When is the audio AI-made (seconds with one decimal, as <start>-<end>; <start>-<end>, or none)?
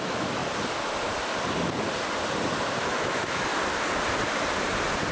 0.0-0.4; 2.8-3.5